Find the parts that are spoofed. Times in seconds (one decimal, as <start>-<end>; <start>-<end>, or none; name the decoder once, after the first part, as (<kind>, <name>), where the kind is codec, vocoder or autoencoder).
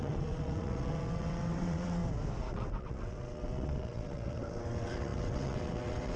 0.0-2.0 (vocoder, WaveNeXt); 2.5-6.2